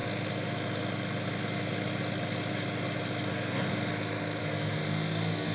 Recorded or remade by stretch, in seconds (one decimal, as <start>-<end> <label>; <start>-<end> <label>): 0.0-3.3 recorded; 3.3-3.7 remade; 3.7-4.4 recorded; 4.4-5.5 remade